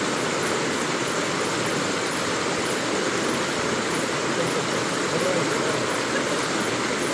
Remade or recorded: recorded